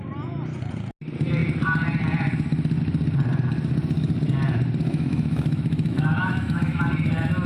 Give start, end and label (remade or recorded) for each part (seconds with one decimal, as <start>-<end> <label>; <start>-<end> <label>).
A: 0.0-4.9 recorded; 4.9-6.9 remade; 6.9-7.5 recorded